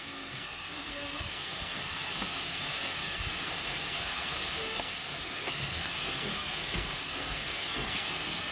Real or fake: fake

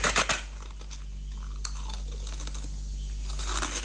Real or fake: real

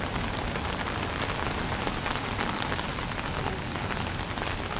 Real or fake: real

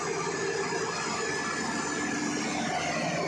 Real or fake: real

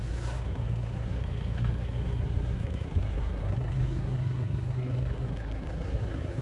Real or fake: fake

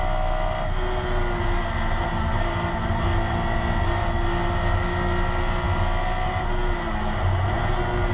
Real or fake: real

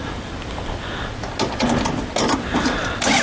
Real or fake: real